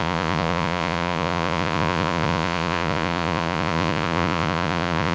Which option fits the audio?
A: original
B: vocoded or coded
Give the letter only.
B